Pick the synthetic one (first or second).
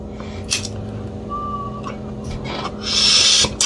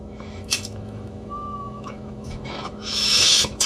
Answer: second